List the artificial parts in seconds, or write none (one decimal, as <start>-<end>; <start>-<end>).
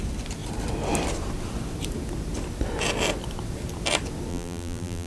4.3-5.1